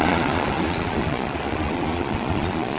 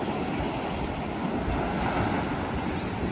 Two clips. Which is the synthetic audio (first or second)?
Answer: first